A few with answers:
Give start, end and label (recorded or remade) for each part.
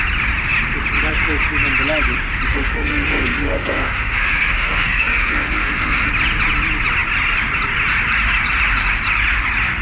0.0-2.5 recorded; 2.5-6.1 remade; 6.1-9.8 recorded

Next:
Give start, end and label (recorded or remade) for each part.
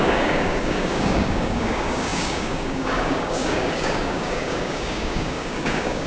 0.0-6.1 remade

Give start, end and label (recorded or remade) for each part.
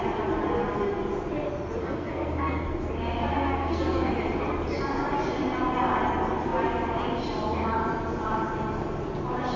0.0-1.8 recorded; 1.8-2.9 remade; 2.9-3.3 recorded; 3.3-4.1 remade; 4.1-9.6 recorded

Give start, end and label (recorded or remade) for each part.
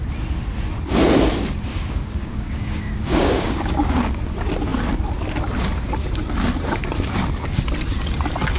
0.0-1.7 recorded; 1.7-4.2 remade; 4.2-8.6 recorded